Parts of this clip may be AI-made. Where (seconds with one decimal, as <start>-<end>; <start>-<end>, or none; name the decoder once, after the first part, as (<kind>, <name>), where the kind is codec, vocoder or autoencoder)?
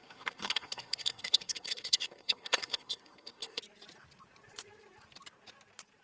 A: 0.0-3.6 (codec, SNAC)